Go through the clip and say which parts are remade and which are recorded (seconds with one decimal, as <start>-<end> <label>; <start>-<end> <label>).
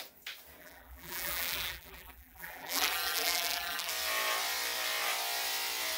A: 0.0-0.6 recorded; 0.6-3.9 remade; 3.9-6.0 recorded